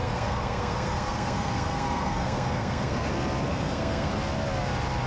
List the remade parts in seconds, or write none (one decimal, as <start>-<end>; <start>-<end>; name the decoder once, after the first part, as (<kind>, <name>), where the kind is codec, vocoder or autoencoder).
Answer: 0.0-3.1 (codec, SNAC); 3.5-4.1